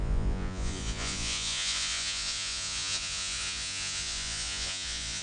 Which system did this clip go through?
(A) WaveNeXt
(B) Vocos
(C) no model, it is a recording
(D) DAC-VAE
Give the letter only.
B